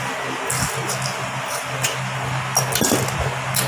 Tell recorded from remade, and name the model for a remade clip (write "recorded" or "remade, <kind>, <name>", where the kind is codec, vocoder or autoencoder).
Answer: recorded